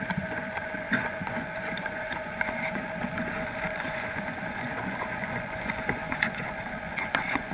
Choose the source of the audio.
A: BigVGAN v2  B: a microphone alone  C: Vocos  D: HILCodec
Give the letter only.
C